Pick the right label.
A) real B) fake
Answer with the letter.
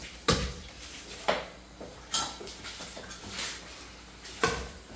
A